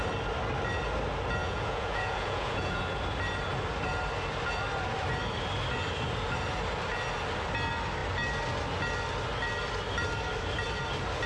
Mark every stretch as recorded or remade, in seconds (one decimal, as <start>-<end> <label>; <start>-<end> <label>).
0.0-1.4 recorded; 1.4-2.8 remade; 2.8-11.3 recorded